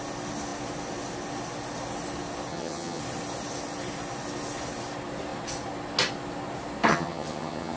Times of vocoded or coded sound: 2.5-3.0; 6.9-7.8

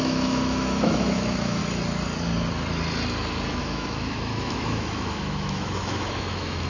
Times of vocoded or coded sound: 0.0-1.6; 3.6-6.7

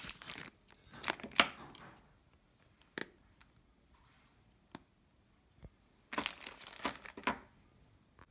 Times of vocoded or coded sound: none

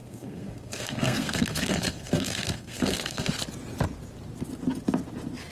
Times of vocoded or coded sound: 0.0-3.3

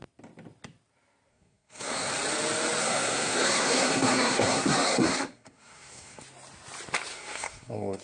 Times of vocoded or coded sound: 1.3-2.1; 2.8-6.2; 7.1-8.0

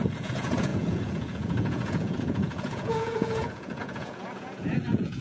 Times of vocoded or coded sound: 0.0-5.2

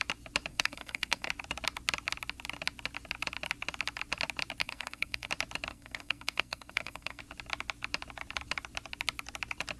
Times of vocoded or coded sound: 0.5-1.3; 4.6-5.3; 5.7-7.2

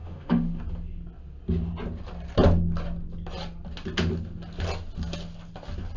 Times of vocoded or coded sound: 0.0-0.6